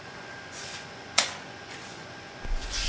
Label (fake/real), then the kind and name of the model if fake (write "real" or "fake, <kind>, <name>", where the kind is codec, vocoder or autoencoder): fake, vocoder, Vocos